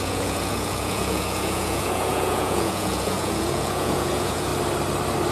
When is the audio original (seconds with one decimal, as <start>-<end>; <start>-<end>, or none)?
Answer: 4.5-5.3